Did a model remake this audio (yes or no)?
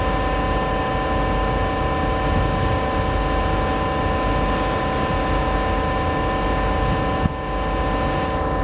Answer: no